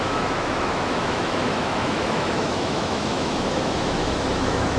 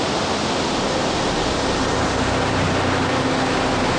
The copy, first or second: first